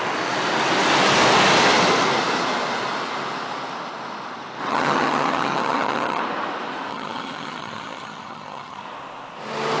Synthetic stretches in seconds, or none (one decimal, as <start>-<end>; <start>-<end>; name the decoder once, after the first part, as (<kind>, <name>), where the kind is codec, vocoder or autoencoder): 4.7-6.2 (vocoder, HiFi-GAN); 6.9-8.8